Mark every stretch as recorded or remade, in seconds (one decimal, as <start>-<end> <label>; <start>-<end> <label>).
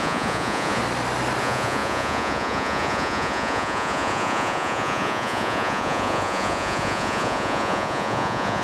0.0-0.8 remade; 0.8-1.4 recorded; 1.4-8.6 remade